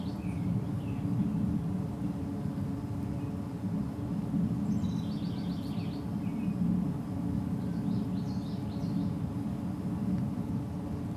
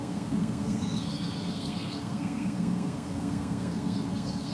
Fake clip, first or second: second